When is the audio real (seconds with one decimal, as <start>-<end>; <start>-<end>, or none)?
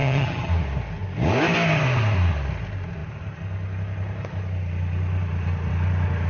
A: 0.5-6.3